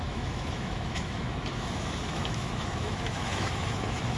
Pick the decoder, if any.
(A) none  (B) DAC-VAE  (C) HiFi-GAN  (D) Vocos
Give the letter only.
B